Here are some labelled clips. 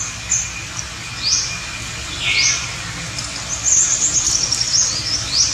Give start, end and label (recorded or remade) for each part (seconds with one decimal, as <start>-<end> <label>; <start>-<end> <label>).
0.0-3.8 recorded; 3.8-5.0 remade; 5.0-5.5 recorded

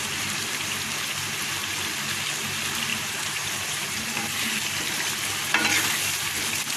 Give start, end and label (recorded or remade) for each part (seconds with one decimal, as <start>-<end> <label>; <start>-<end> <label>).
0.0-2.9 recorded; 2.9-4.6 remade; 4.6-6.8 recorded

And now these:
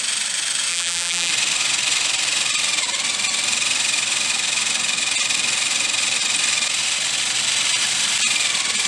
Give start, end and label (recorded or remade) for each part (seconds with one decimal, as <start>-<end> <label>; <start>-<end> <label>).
0.0-0.7 recorded; 0.7-1.3 remade; 1.3-8.9 recorded

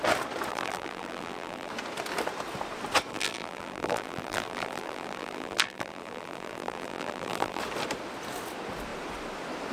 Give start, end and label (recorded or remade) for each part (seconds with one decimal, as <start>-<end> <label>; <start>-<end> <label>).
0.0-0.5 recorded; 0.5-1.7 remade; 1.7-3.1 recorded; 3.1-7.6 remade; 7.6-9.7 recorded

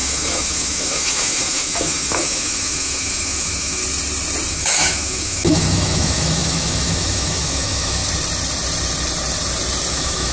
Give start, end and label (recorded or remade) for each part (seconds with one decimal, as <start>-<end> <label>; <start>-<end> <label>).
0.0-3.8 remade; 3.8-4.5 recorded; 4.5-8.0 remade; 8.0-9.9 recorded; 9.9-10.3 remade

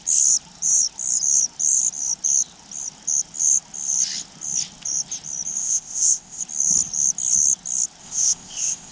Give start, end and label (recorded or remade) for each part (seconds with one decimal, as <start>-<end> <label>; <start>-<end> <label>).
0.0-5.6 recorded; 5.6-6.4 remade; 6.4-8.0 recorded; 8.0-8.9 remade